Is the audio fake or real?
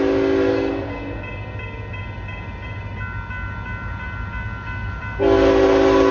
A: real